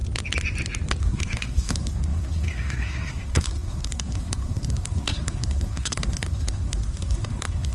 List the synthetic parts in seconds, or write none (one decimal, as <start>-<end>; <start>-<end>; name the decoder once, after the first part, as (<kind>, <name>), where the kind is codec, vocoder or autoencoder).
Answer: 1.0-7.7 (codec, SNAC)